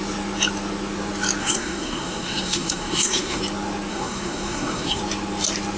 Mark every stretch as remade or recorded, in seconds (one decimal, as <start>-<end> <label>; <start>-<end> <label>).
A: 0.0-1.4 recorded; 1.4-3.4 remade; 3.4-3.9 recorded; 3.9-5.0 remade; 5.0-5.8 recorded